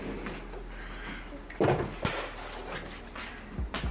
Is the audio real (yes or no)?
yes